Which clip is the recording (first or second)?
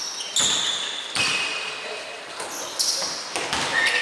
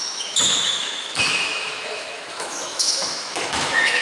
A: first